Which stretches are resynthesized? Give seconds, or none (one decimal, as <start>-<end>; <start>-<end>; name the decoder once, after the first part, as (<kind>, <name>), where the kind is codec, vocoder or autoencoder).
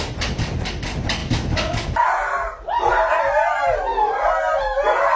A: none